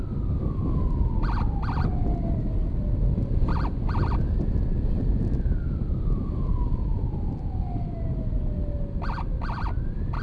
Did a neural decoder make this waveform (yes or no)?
no